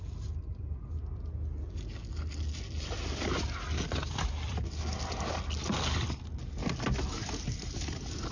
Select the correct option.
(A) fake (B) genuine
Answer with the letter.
B